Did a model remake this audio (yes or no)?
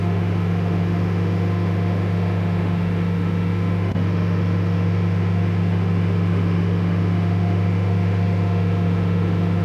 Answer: yes